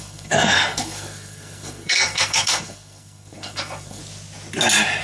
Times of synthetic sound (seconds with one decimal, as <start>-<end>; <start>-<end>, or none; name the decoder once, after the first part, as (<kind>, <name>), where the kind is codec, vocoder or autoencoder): 0.0-4.0 (codec, SNAC)